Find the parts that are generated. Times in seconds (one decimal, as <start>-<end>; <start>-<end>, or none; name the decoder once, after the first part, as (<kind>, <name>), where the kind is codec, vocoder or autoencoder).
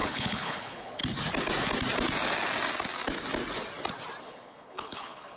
0.0-1.0 (codec, HILCodec); 4.2-5.4